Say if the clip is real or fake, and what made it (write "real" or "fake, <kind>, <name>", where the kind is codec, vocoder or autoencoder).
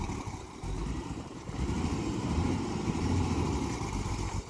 fake, vocoder, BigVGAN v2